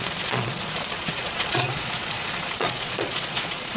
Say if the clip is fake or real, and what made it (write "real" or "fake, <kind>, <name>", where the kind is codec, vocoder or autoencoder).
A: fake, vocoder, Vocos